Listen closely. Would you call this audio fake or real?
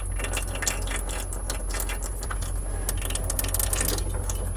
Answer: real